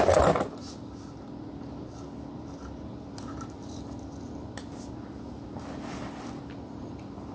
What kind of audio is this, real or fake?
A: real